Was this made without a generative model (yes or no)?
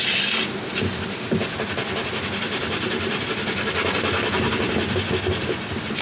yes